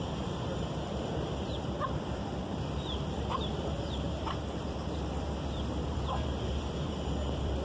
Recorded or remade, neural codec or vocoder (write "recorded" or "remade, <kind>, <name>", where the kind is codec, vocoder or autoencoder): remade, vocoder, BigVGAN v2